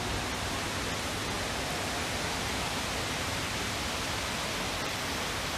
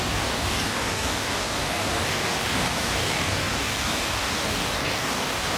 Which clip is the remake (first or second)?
second